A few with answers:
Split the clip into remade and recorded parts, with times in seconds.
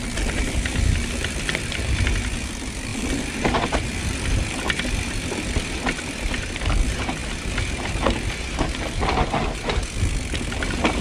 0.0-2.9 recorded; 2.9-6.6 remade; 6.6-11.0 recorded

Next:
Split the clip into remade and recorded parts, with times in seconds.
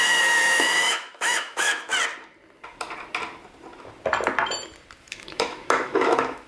0.0-1.9 remade; 1.9-5.1 recorded; 5.1-6.5 remade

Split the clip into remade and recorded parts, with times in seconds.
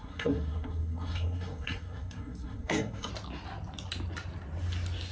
0.0-3.1 remade; 3.1-5.1 recorded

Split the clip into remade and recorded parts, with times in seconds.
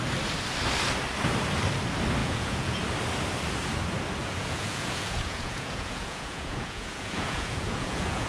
0.0-2.2 recorded; 2.2-2.8 remade; 2.8-4.2 recorded; 4.2-8.3 remade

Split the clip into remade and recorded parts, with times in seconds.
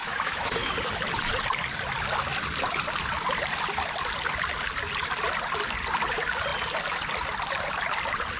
0.0-0.7 remade; 0.7-8.4 recorded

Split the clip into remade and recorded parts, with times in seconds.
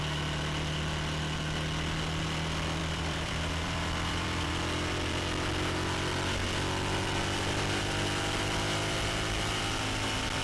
0.0-2.8 recorded; 2.8-4.5 remade; 4.5-10.4 recorded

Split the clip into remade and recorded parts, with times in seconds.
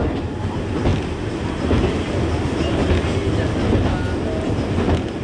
0.0-5.2 recorded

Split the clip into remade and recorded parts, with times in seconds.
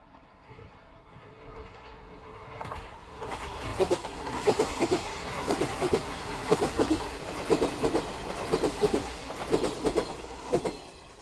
0.0-7.2 remade; 7.2-8.7 recorded; 8.7-9.3 remade; 9.3-10.2 recorded; 10.2-10.6 remade; 10.6-11.2 recorded